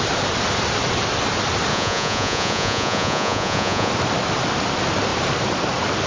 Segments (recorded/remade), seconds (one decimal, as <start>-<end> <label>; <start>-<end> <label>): 0.0-1.7 recorded; 1.7-3.9 remade; 3.9-6.1 recorded